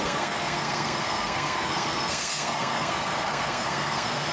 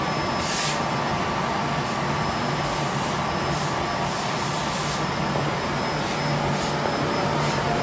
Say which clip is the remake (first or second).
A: first